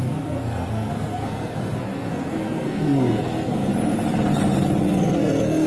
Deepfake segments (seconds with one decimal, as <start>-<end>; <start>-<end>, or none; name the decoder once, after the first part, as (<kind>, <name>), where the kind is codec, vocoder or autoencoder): 0.0-3.7 (codec, SNAC); 4.8-5.7